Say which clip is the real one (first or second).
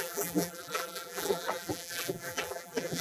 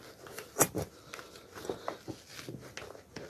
second